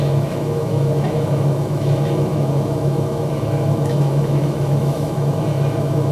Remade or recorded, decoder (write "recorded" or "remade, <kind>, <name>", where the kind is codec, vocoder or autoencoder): remade, autoencoder, DAC-VAE